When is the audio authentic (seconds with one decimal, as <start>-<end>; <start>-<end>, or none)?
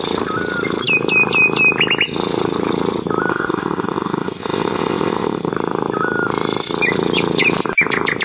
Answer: 0.0-3.3; 5.5-8.2